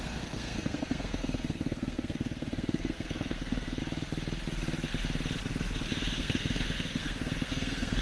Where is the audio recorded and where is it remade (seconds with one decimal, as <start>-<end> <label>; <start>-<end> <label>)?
0.0-3.8 remade; 3.8-6.2 recorded; 6.2-8.0 remade